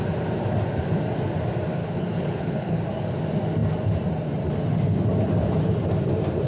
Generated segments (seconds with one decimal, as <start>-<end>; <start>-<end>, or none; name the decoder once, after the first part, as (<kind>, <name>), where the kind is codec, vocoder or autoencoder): 1.8-2.8 (codec, HILCodec)